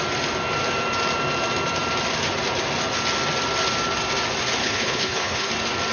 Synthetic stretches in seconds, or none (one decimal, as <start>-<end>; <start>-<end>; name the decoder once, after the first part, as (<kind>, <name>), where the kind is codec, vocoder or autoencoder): 4.6-5.5 (codec, HILCodec)